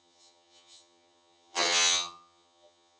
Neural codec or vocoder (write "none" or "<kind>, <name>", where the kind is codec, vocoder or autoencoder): vocoder, HiFi-GAN